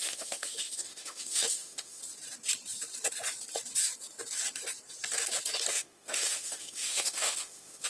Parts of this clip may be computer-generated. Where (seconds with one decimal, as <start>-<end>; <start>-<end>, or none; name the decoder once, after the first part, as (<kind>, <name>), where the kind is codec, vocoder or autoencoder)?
0.0-2.0 (autoencoder, DAC-VAE); 5.7-7.9